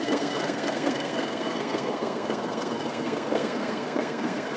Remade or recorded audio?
remade